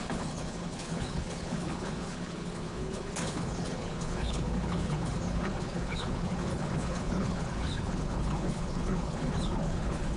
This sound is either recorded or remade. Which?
remade